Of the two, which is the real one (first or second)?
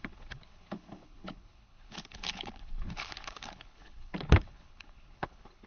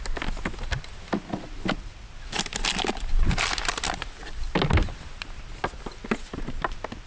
second